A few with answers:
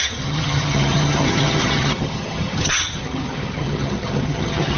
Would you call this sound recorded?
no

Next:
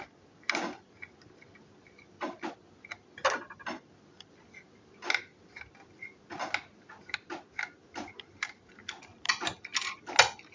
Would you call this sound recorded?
yes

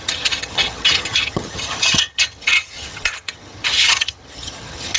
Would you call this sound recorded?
no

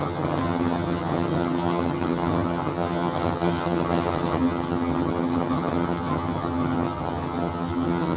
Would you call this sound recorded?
no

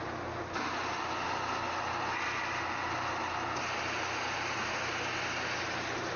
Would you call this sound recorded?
yes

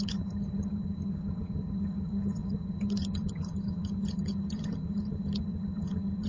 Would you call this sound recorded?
no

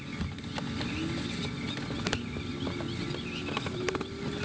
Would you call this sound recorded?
yes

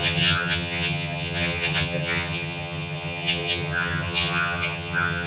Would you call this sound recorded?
no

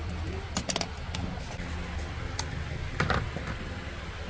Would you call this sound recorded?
yes